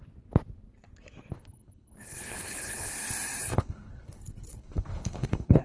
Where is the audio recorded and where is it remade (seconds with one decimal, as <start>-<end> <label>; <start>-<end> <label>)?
0.0-1.3 recorded; 1.3-2.9 remade; 2.9-3.4 recorded; 3.4-5.6 remade